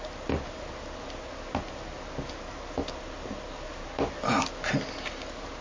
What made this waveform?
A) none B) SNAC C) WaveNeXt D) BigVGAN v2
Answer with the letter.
A